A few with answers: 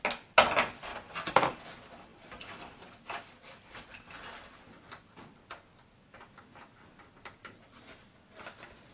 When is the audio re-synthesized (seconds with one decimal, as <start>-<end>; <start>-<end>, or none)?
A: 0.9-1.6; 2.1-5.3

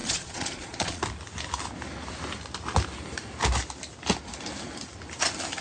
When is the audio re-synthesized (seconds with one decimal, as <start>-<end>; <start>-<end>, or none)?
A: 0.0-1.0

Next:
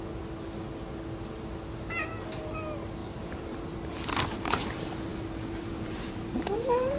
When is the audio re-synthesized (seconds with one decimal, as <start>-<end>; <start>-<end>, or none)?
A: 3.0-7.0

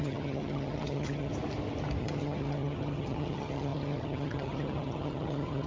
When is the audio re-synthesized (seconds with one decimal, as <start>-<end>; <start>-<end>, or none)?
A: 0.0-1.3; 2.0-5.7